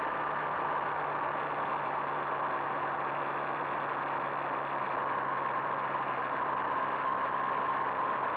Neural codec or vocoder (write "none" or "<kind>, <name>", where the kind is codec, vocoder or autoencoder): none